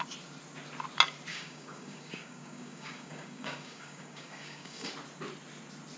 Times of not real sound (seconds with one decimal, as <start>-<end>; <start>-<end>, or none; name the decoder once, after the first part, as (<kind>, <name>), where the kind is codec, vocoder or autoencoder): 1.3-4.9 (codec, DAC)